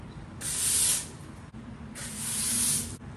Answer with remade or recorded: recorded